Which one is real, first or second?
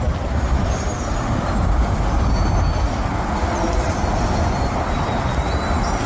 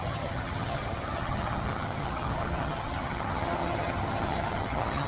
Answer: first